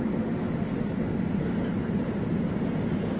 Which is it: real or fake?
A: real